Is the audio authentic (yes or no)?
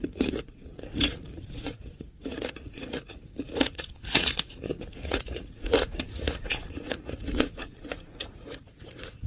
no